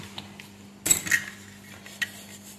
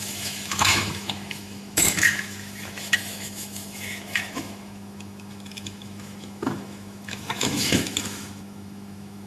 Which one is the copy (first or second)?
second